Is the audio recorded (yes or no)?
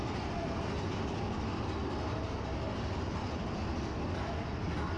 yes